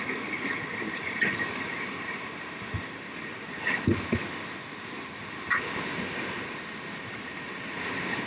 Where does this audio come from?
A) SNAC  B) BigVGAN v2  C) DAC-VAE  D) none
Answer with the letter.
D